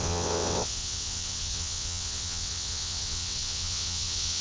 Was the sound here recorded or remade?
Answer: remade